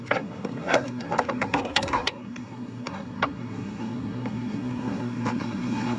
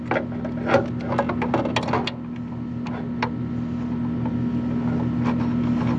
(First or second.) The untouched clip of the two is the second